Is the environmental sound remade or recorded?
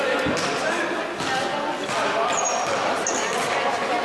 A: recorded